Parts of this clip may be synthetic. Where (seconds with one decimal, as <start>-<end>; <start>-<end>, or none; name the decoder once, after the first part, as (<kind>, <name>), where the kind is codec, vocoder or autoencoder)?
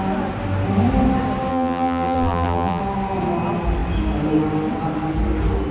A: 1.5-2.8 (vocoder, BigVGAN v2)